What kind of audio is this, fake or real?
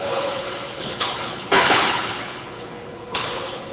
fake